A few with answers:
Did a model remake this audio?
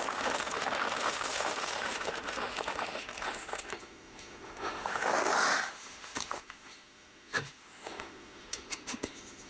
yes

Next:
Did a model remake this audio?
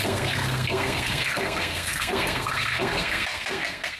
yes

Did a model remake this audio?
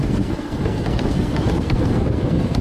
yes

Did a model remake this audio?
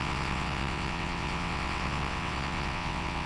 yes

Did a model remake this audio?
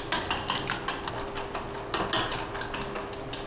no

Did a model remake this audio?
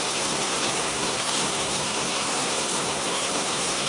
yes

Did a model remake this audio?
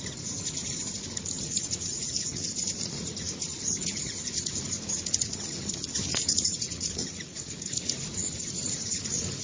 yes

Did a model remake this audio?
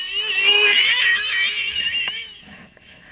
yes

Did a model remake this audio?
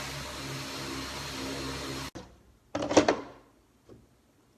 no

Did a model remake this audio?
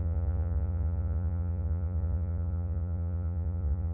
yes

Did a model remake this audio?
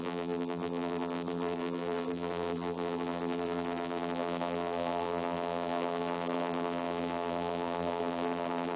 yes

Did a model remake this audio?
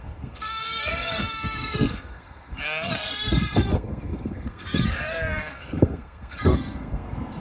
yes